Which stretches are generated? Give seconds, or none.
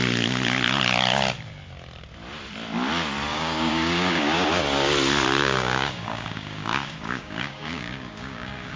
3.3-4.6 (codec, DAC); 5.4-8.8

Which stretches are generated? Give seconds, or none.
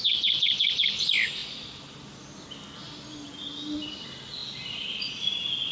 none